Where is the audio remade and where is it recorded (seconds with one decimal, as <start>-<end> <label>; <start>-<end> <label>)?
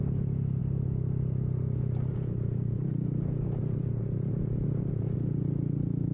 0.0-6.1 recorded